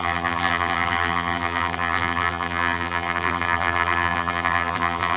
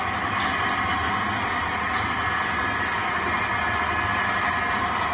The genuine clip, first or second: second